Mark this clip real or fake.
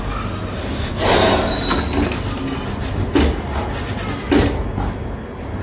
real